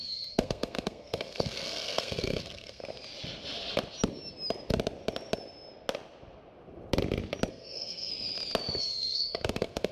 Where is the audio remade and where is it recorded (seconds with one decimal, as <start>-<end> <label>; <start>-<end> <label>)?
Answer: 0.0-2.8 remade; 2.8-7.5 recorded; 7.5-8.1 remade; 8.1-8.8 recorded; 8.8-9.9 remade